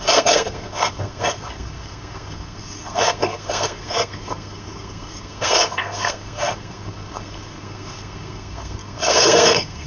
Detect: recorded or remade remade